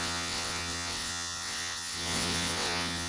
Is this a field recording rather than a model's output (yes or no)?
no